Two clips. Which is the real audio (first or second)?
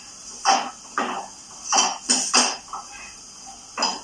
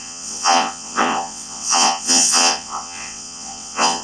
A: first